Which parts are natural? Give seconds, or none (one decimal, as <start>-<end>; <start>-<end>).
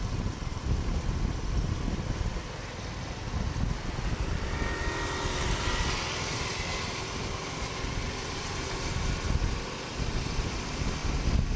0.0-11.0